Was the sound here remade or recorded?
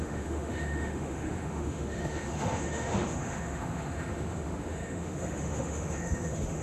remade